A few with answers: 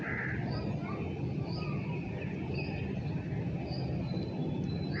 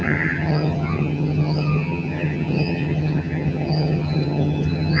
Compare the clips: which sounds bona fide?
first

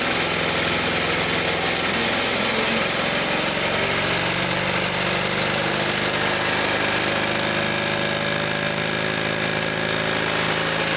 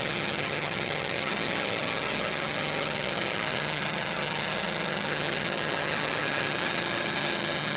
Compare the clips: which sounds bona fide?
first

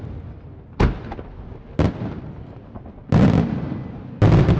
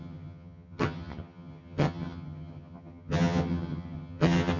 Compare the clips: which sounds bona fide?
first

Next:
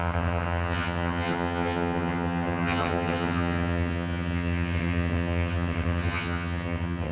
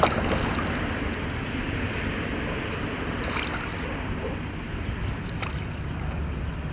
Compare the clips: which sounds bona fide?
second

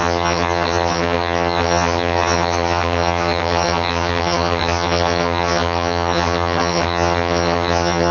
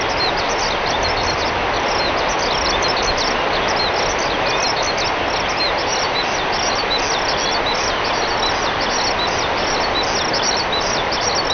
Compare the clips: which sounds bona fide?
second